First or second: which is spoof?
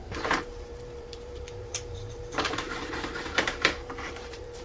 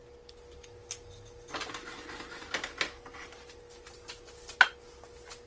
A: first